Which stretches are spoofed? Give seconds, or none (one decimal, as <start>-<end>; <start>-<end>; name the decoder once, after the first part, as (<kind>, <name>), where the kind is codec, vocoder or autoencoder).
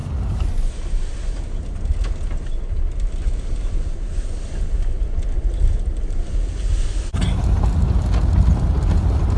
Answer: 0.0-0.7 (vocoder, BigVGAN v2)